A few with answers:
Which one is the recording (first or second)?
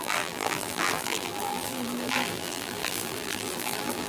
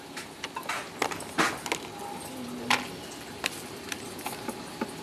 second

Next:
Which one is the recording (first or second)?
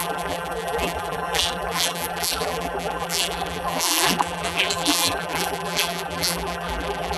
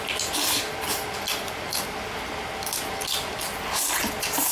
second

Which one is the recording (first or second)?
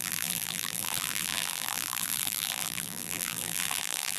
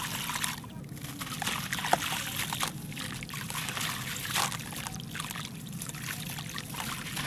second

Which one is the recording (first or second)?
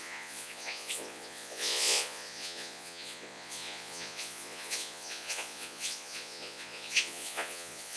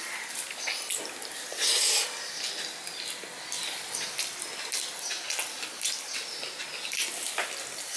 second